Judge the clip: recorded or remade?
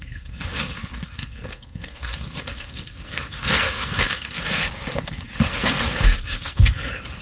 remade